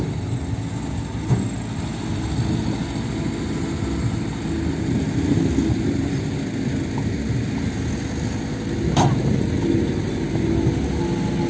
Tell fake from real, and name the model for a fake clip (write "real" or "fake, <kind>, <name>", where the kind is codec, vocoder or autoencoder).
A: real